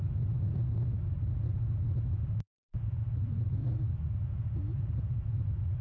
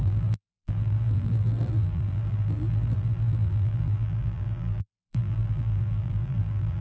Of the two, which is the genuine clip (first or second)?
first